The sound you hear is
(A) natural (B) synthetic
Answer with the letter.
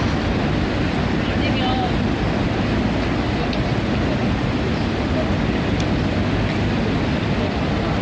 A